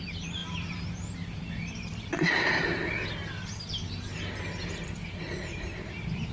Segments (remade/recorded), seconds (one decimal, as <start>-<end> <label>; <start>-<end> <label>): 0.0-6.3 remade